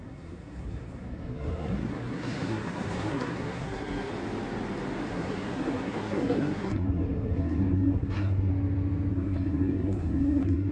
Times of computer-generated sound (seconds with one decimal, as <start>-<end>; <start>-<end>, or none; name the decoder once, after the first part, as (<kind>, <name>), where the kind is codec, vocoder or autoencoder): 0.0-4.1 (codec, SNAC); 5.1-8.5; 9.1-10.7